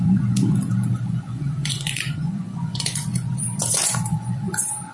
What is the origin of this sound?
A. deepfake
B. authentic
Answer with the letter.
A